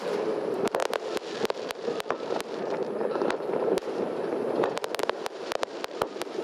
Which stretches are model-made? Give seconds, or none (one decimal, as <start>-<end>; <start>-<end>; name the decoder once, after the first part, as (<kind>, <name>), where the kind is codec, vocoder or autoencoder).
0.0-0.8 (vocoder, BigVGAN v2); 1.6-6.4